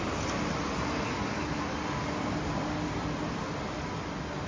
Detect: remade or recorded recorded